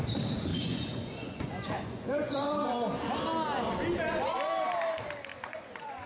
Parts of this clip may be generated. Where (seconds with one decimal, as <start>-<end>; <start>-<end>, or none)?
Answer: 0.5-3.0; 5.3-6.1